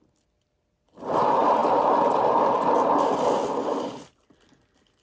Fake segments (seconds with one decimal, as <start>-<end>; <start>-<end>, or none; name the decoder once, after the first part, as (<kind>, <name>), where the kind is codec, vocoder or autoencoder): none